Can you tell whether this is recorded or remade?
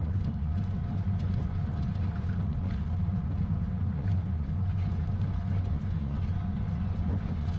remade